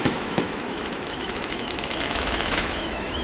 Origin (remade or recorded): remade